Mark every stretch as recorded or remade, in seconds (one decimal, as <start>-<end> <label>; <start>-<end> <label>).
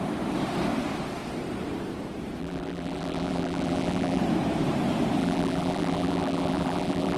0.0-2.4 recorded; 2.4-4.2 remade; 4.2-5.2 recorded; 5.2-7.2 remade